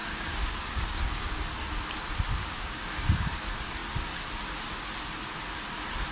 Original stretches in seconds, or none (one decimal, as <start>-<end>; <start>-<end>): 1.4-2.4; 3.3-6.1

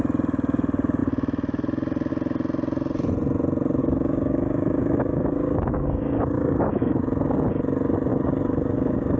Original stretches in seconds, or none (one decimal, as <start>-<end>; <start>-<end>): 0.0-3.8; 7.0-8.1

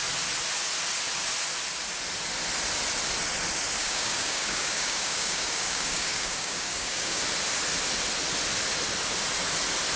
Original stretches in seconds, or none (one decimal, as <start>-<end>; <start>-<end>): 0.0-3.8; 7.2-10.0